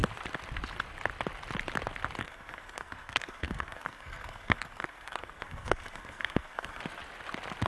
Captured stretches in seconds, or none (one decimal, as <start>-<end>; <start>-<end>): 0.0-2.2; 6.8-7.7